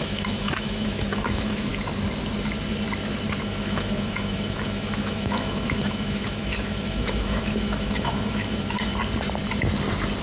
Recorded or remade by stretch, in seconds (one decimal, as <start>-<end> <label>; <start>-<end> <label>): 0.0-1.7 remade; 1.7-3.4 recorded; 3.4-8.9 remade; 8.9-10.2 recorded

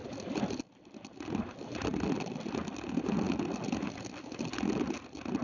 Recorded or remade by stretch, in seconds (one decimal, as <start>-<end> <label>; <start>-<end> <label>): 0.0-5.4 recorded

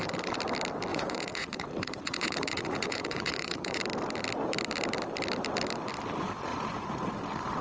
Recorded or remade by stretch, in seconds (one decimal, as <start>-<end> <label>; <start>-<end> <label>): 0.0-0.9 recorded; 0.9-3.8 remade; 3.8-6.5 recorded; 6.5-7.1 remade; 7.1-7.6 recorded